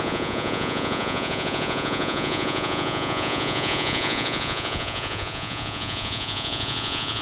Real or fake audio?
fake